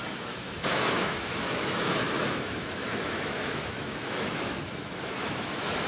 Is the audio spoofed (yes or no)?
yes